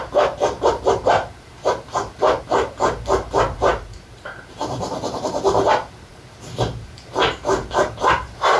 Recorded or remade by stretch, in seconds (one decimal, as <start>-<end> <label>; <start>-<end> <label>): 0.0-8.6 remade